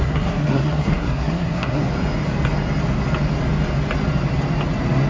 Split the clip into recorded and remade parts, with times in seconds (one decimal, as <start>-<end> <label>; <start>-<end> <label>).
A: 0.0-1.8 remade; 1.8-5.1 recorded